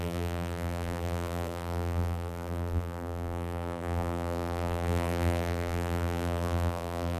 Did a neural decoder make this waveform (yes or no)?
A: yes